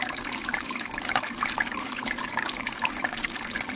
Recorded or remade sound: remade